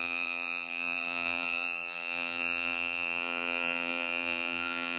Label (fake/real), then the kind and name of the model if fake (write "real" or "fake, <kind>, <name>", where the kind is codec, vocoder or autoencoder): fake, vocoder, BigVGAN v2